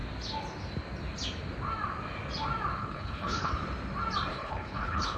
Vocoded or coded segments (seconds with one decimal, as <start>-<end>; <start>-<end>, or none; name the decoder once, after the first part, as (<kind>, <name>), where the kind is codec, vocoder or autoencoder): 2.8-3.5 (codec, HILCodec); 4.3-5.2